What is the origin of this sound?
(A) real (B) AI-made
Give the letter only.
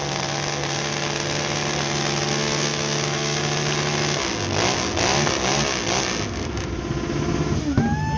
A